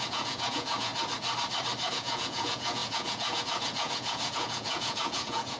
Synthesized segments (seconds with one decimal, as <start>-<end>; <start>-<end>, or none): 0.0-0.9; 1.9-5.6